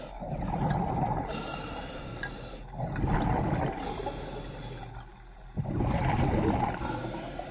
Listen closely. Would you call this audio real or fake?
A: real